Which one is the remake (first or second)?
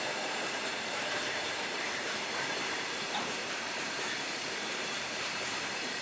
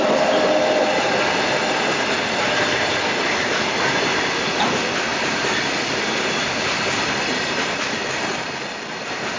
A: first